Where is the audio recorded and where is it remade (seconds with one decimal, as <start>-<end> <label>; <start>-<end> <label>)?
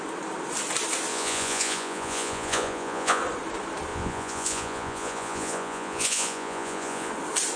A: 0.0-1.1 recorded; 1.1-3.2 remade; 3.2-3.9 recorded; 3.9-7.1 remade; 7.1-7.6 recorded